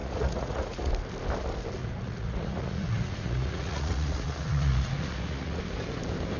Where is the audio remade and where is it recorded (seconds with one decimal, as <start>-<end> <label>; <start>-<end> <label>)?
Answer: 0.0-0.9 remade; 0.9-1.8 recorded; 1.8-5.6 remade; 5.6-6.4 recorded

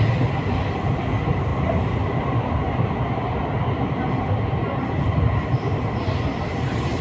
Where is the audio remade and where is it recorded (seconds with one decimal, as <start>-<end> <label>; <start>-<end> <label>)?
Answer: 0.0-7.0 recorded